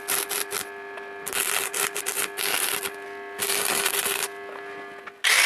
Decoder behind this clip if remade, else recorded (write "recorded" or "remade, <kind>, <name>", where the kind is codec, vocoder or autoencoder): recorded